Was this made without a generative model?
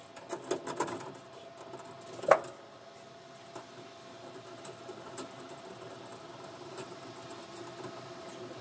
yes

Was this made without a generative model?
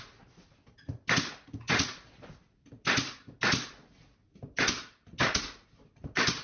yes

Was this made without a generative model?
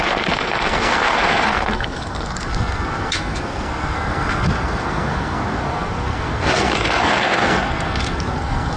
no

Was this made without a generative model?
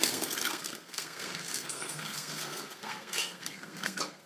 no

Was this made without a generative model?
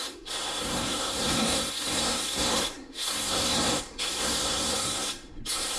no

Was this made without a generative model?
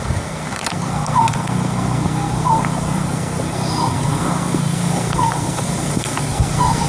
no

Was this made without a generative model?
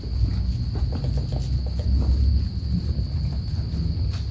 yes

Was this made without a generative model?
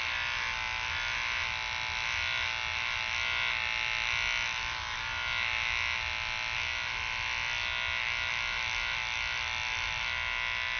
yes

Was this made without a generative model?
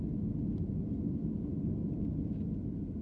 yes